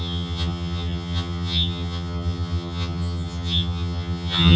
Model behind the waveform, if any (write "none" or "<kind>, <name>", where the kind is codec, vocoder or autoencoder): vocoder, HiFi-GAN